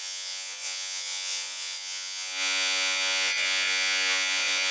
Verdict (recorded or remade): remade